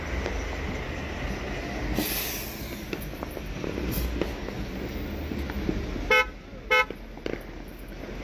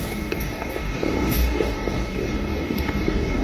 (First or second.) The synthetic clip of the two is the second